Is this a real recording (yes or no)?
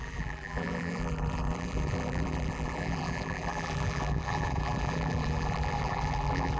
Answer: no